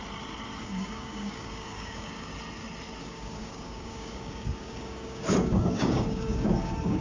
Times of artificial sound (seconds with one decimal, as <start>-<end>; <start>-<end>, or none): 0.6-2.3; 3.0-7.0